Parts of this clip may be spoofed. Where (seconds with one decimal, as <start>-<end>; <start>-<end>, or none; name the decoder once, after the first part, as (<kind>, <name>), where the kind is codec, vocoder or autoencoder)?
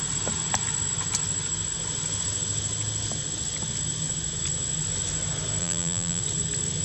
5.6-6.2 (vocoder, BigVGAN v2)